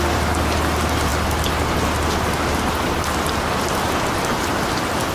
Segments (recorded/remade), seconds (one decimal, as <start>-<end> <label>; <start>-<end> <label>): 0.0-5.1 recorded